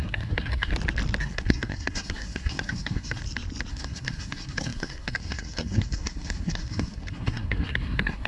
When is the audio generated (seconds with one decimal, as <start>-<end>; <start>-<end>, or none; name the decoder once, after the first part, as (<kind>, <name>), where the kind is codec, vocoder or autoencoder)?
0.0-0.7 (codec, SNAC); 1.2-3.2; 3.7-8.3